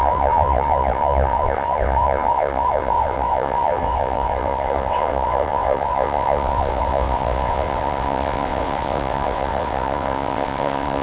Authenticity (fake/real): fake